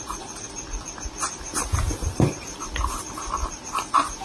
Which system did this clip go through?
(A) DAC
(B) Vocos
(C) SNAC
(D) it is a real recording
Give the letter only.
D